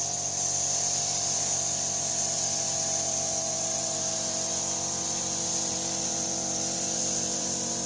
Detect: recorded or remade remade